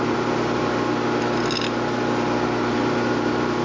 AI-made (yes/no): no